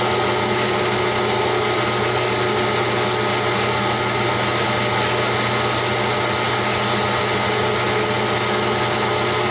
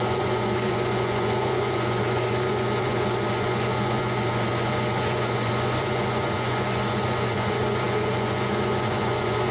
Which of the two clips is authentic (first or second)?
first